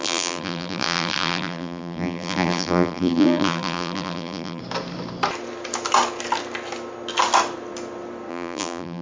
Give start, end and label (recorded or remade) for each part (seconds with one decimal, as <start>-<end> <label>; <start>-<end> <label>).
0.0-4.6 remade; 4.6-8.3 recorded; 8.3-9.0 remade